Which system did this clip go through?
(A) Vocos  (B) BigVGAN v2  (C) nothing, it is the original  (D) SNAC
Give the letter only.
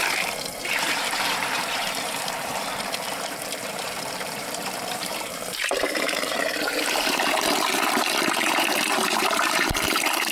B